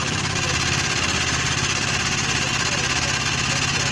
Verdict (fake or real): real